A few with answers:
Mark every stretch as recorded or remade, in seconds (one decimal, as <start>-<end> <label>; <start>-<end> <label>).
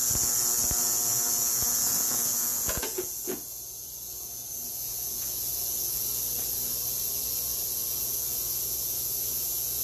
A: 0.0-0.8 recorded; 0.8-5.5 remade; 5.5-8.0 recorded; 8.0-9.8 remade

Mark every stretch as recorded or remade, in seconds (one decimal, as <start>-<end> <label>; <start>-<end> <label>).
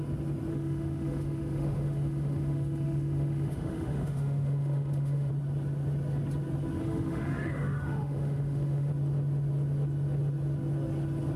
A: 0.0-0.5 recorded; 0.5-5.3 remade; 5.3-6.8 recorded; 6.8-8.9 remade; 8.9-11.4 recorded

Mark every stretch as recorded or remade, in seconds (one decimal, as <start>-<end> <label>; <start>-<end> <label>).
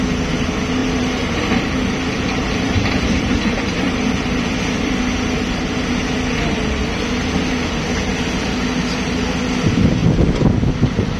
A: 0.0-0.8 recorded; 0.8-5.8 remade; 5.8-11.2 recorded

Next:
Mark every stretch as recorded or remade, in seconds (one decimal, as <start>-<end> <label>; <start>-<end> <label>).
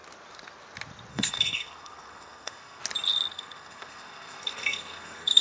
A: 0.0-1.1 recorded; 1.1-2.8 remade; 2.8-3.3 recorded; 3.3-5.4 remade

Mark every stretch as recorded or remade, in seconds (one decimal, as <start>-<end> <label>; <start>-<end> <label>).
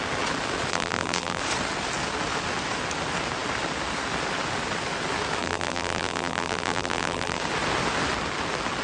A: 0.0-0.7 recorded; 0.7-1.4 remade; 1.4-5.4 recorded; 5.4-7.4 remade; 7.4-8.8 recorded